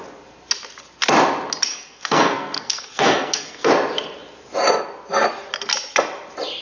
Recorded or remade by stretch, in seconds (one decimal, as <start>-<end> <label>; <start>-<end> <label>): 0.0-1.7 recorded; 1.7-3.7 remade; 3.7-6.6 recorded

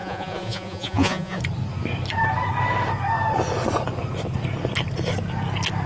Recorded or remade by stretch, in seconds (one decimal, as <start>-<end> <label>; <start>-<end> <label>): 0.0-1.4 remade; 1.4-5.9 recorded

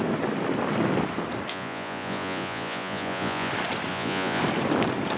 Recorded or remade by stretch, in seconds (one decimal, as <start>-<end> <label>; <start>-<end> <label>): 0.0-1.5 recorded; 1.5-3.5 remade; 3.5-3.9 recorded; 3.9-4.4 remade; 4.4-5.2 recorded

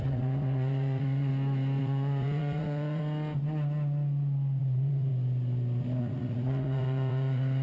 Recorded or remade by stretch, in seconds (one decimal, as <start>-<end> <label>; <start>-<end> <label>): 0.0-1.3 remade; 1.3-1.8 recorded; 1.8-3.0 remade; 3.0-4.6 recorded; 4.6-5.1 remade; 5.1-6.0 recorded; 6.0-7.6 remade

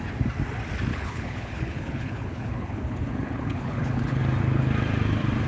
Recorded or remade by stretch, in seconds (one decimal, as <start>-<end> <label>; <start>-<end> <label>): 0.0-0.9 recorded; 0.9-4.2 remade; 4.2-5.5 recorded

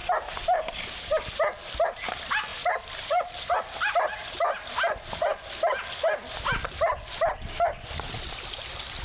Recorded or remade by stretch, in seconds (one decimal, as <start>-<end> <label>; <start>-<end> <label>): 0.0-1.3 remade; 1.3-2.5 recorded; 2.5-3.6 remade; 3.6-4.2 recorded; 4.2-5.4 remade; 5.4-9.0 recorded